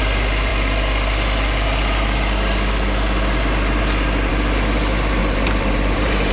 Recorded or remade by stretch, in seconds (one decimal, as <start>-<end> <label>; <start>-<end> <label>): 0.0-5.2 recorded; 5.2-6.3 remade

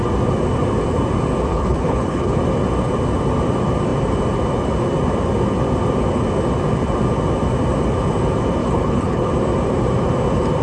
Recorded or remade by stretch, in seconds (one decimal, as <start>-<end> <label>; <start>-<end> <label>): 0.0-1.5 recorded; 1.5-2.4 remade; 2.4-8.6 recorded; 8.6-9.3 remade; 9.3-10.6 recorded

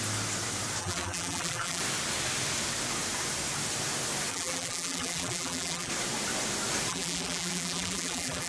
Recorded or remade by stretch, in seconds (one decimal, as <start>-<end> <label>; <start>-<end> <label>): 0.0-0.8 recorded; 0.8-1.8 remade; 1.8-4.3 recorded; 4.3-5.9 remade; 5.9-6.9 recorded; 6.9-8.5 remade

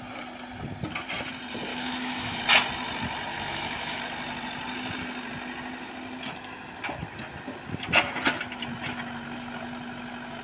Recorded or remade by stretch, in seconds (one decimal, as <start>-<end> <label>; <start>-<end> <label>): 0.0-1.7 recorded; 1.7-2.4 remade; 2.4-3.3 recorded; 3.3-4.0 remade; 4.0-10.4 recorded

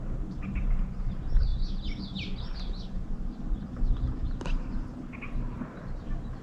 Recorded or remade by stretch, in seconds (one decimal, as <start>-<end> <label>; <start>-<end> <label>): 0.0-6.4 recorded

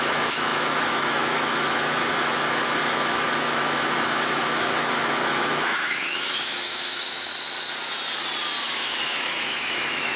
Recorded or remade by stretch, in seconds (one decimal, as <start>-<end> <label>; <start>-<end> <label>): 0.0-7.3 remade; 7.3-8.6 recorded; 8.6-10.2 remade